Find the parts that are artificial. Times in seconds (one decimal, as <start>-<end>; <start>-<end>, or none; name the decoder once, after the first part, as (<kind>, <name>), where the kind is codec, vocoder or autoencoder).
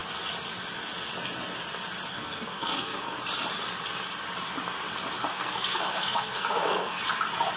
2.1-3.2 (codec, SNAC); 5.3-7.0